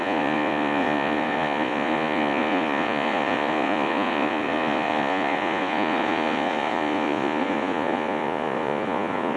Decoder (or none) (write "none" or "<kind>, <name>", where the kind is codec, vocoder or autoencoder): vocoder, Vocos